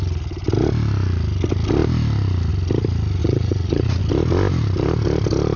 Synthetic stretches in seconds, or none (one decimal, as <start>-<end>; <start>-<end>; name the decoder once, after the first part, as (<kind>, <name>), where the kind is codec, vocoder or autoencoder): 3.2-4.0 (vocoder, Vocos)